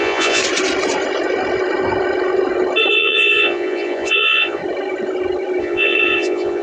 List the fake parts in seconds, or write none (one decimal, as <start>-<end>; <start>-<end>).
0.0-0.4; 2.9-4.6; 5.6-6.6